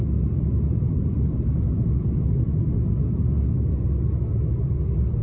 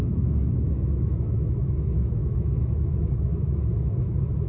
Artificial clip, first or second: second